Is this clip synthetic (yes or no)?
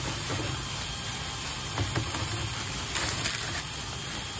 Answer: no